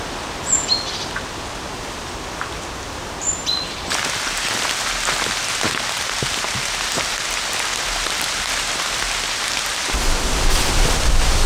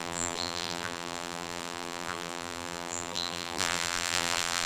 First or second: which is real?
first